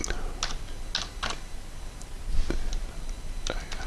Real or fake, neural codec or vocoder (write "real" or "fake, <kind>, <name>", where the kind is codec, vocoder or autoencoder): real